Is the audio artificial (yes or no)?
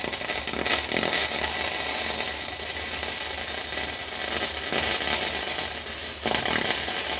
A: no